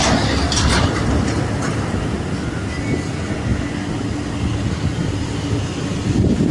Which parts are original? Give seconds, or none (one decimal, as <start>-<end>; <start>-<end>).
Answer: 0.0-6.5